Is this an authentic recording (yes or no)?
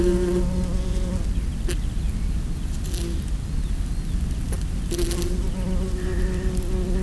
yes